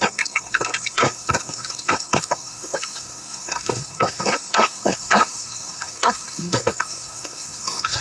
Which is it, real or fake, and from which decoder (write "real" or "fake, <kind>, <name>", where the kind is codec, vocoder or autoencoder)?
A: fake, codec, SNAC